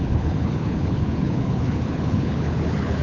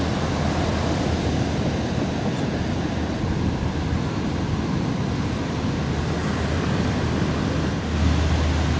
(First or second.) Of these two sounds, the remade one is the first